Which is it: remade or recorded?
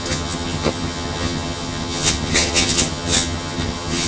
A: remade